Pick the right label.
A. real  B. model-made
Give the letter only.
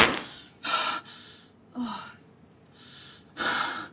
A